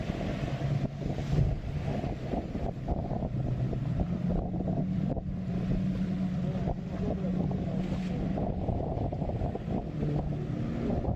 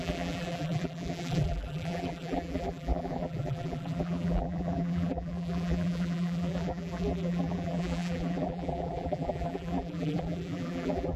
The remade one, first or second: second